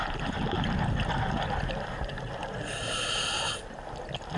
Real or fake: real